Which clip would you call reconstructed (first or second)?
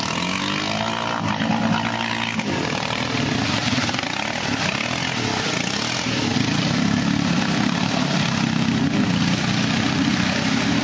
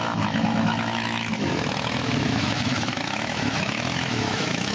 second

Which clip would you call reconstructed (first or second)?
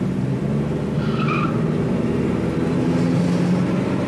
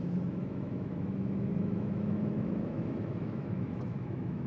second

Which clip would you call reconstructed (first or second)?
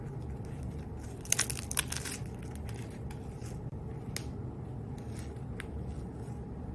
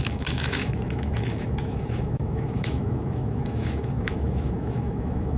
second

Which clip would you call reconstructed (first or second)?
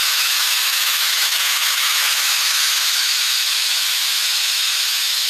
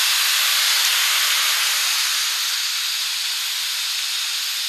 first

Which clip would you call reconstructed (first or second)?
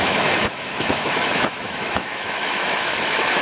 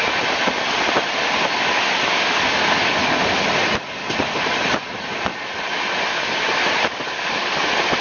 first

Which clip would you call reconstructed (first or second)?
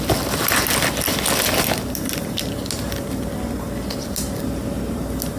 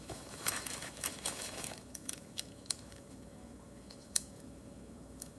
second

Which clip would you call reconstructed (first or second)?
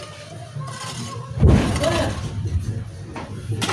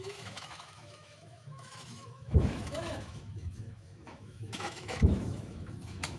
second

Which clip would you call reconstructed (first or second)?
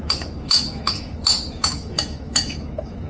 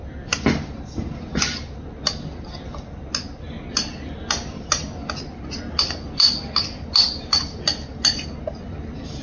first